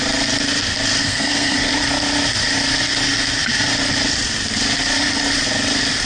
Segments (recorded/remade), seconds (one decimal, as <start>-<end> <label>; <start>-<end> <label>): 0.0-1.0 recorded; 1.0-1.7 remade; 1.7-6.1 recorded